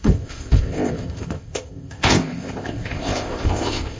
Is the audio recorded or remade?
remade